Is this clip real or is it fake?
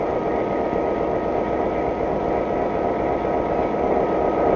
real